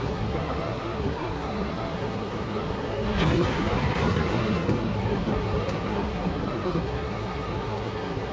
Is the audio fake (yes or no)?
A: yes